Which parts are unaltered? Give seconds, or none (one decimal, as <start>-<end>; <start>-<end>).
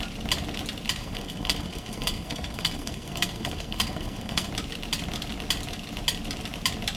0.0-1.0; 4.5-7.0